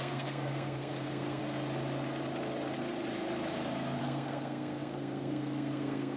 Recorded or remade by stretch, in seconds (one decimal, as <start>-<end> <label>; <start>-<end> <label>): 0.0-1.4 remade; 1.4-4.0 recorded; 4.0-6.2 remade

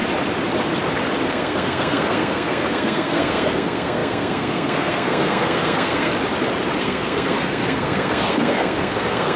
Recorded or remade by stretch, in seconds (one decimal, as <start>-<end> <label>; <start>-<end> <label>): 0.0-1.3 recorded; 1.3-6.1 remade; 6.1-6.8 recorded; 6.8-9.4 remade